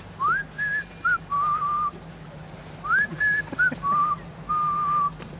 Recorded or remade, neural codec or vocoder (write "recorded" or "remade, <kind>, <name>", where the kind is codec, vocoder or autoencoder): recorded